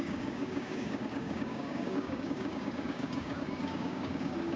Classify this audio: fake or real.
fake